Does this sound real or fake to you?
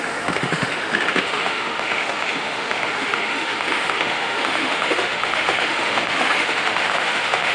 fake